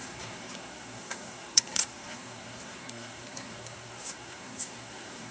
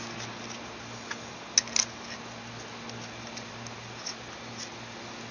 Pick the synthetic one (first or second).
first